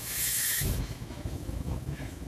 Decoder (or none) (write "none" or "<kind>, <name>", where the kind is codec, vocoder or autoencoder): autoencoder, DAC-VAE